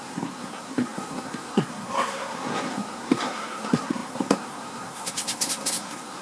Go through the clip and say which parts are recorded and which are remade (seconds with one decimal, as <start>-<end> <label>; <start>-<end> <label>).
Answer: 0.0-6.2 remade